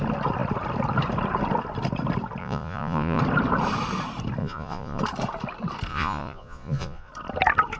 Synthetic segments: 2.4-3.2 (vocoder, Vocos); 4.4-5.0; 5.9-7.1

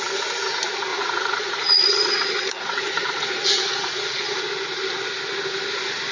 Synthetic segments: 0.9-4.4 (vocoder, Vocos)

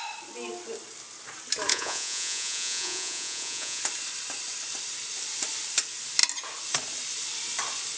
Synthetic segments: 1.7-3.8 (vocoder, Vocos)

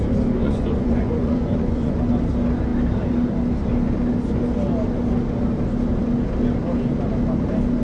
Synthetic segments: 0.4-2.0 (vocoder, Vocos)

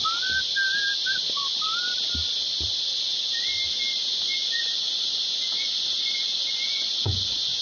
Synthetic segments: 4.6-7.6 (vocoder, Vocos)

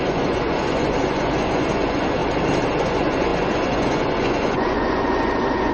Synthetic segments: 0.0-2.2 (vocoder, Vocos); 2.8-5.7

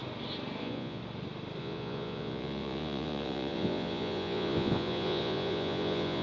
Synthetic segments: 0.6-1.0 (vocoder, Vocos); 1.6-6.2